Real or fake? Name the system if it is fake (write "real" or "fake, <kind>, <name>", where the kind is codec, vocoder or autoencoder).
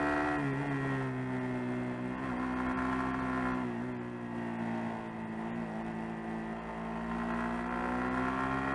real